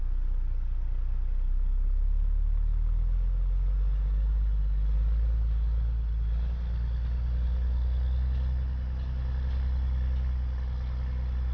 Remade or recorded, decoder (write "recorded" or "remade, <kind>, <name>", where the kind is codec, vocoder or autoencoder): recorded